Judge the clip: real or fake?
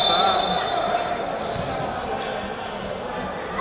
real